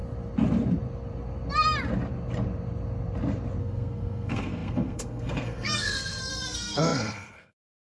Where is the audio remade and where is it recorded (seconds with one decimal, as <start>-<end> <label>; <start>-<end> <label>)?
0.0-3.6 recorded; 3.6-7.9 remade